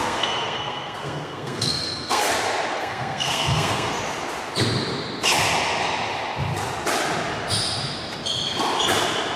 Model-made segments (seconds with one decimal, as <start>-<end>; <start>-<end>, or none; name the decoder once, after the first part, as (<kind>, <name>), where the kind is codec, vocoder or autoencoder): 0.0-2.3 (codec, SNAC); 2.7-3.9